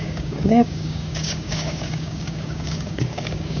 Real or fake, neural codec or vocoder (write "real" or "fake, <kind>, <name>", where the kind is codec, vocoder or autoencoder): fake, codec, DAC